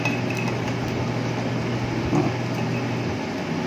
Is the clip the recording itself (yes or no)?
yes